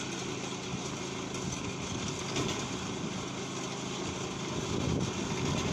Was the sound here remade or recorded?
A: recorded